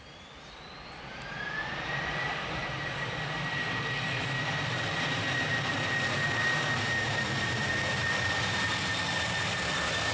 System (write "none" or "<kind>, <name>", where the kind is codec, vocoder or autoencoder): vocoder, BigVGAN v2